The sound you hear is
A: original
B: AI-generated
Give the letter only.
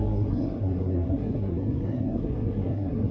B